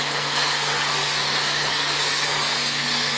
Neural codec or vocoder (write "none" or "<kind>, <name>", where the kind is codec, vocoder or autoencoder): codec, SNAC